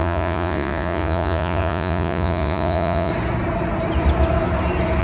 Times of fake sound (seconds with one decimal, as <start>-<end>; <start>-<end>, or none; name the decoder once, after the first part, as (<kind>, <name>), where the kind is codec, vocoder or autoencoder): 0.0-3.1 (vocoder, Vocos)

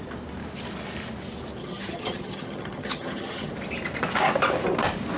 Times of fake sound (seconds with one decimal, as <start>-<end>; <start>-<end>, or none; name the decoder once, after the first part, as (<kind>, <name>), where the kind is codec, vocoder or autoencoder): 1.6-3.5 (vocoder, HiFi-GAN)

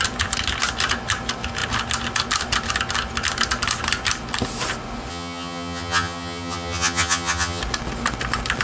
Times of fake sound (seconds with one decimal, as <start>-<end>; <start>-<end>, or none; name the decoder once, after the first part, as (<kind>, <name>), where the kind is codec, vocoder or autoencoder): 5.1-7.6 (vocoder, HiFi-GAN)

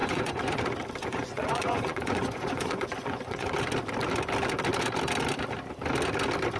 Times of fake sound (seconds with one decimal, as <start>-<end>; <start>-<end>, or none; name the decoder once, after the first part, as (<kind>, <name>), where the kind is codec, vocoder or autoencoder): 0.0-0.6 (vocoder, Vocos); 1.0-3.5

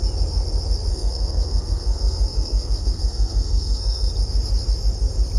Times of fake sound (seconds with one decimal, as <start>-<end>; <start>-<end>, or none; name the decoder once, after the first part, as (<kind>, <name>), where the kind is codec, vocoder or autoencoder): 0.9-4.1 (codec, SNAC)

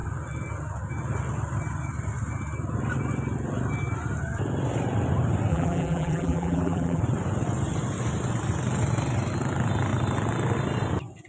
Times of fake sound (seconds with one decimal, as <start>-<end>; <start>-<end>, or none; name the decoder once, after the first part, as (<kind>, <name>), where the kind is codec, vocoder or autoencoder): 5.5-7.0 (vocoder, BigVGAN v2)

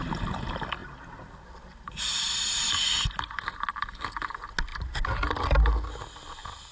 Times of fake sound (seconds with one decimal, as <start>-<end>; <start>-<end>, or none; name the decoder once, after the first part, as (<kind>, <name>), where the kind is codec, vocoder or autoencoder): none

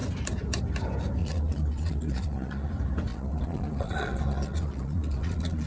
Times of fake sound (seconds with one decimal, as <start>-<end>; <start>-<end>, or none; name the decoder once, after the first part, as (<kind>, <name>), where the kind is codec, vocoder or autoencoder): 1.2-2.7 (vocoder, Vocos); 3.1-5.7